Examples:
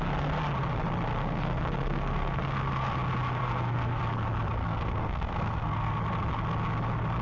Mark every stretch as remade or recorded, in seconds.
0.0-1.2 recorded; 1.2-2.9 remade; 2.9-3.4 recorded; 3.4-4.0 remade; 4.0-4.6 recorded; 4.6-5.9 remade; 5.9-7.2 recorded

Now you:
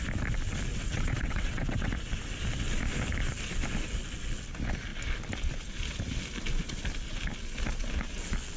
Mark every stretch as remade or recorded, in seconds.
0.0-0.7 recorded; 0.7-1.9 remade; 1.9-8.6 recorded

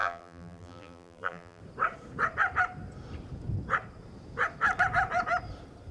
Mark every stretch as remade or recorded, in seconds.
0.0-1.6 remade; 1.6-5.9 recorded

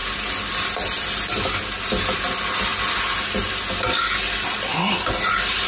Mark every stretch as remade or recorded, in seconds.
0.0-5.7 recorded

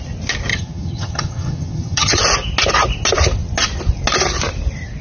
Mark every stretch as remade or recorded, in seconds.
0.0-0.5 recorded; 0.5-2.2 remade; 2.2-5.0 recorded

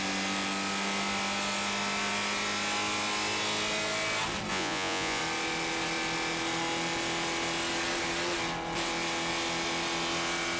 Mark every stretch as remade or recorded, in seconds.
0.0-4.5 recorded; 4.5-5.2 remade; 5.2-10.6 recorded

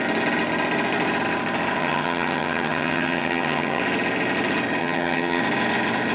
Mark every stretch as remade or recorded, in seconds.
0.0-1.8 recorded; 1.8-3.8 remade; 3.8-4.8 recorded; 4.8-5.4 remade; 5.4-6.1 recorded